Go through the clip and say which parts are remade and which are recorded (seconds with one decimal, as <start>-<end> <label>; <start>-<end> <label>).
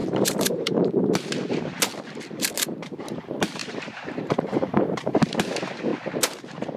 0.0-1.1 remade; 1.1-3.6 recorded; 3.6-5.2 remade; 5.2-6.8 recorded